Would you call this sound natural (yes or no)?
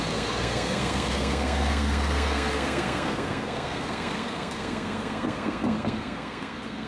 no